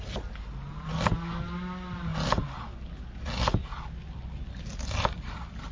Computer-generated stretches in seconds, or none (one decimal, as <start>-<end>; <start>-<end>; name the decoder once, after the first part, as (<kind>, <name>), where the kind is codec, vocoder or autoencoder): none